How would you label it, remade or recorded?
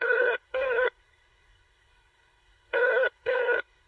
remade